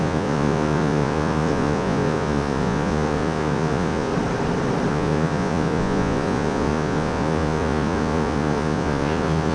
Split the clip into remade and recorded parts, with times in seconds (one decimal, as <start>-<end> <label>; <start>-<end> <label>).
0.0-4.1 remade; 4.1-4.9 recorded; 4.9-9.5 remade